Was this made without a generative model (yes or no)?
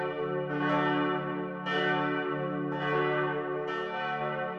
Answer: yes